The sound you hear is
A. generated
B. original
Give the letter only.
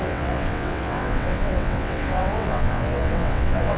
A